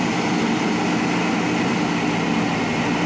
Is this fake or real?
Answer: real